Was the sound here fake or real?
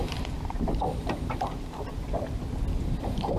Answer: real